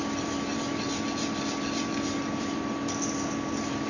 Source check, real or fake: real